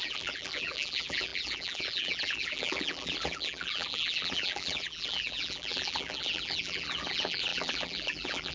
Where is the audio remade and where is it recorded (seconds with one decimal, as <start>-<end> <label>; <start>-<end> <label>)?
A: 0.0-8.5 remade

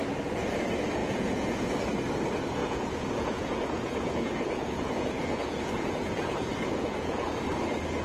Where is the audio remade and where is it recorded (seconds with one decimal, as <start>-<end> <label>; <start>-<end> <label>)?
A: 0.0-1.0 recorded; 1.0-1.8 remade; 1.8-2.6 recorded; 2.6-7.4 remade; 7.4-8.0 recorded

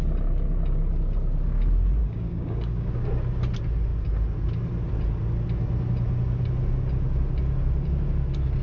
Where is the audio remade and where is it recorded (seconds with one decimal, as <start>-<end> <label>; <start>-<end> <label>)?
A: 0.0-2.0 recorded; 2.0-2.9 remade; 2.9-8.6 recorded

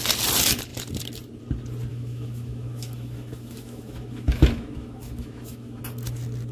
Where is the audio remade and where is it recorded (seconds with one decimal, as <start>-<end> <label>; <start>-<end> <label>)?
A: 0.0-1.9 recorded; 1.9-5.8 remade; 5.8-6.5 recorded

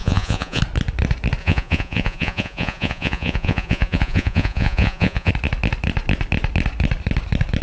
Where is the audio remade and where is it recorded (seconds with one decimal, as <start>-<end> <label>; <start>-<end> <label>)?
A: 0.0-0.6 remade; 0.6-1.4 recorded; 1.4-5.3 remade; 5.3-7.6 recorded

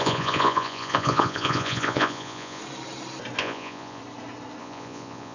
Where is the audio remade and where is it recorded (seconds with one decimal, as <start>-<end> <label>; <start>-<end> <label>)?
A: 0.0-2.6 remade; 2.6-3.4 recorded; 3.4-4.0 remade; 4.0-4.6 recorded; 4.6-5.3 remade